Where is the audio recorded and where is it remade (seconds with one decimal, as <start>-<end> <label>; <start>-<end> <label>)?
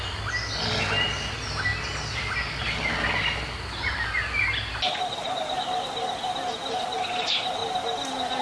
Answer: 0.0-8.4 recorded